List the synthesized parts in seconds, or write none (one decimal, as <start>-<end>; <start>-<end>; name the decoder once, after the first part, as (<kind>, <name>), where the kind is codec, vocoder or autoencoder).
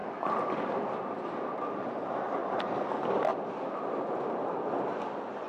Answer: none